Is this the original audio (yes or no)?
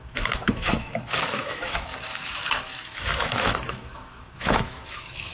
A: no